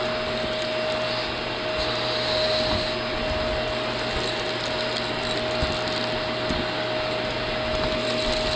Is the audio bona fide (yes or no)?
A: yes